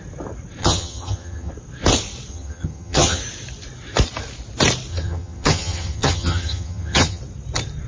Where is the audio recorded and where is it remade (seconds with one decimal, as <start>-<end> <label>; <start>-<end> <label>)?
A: 0.0-0.6 recorded; 0.6-1.5 remade; 1.5-2.3 recorded; 2.3-3.2 remade; 3.2-4.9 recorded; 4.9-7.2 remade; 7.2-7.9 recorded